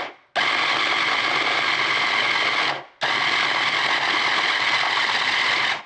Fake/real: real